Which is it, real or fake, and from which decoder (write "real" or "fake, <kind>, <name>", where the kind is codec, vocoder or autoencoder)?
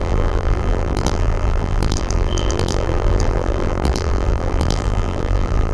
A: fake, vocoder, BigVGAN v2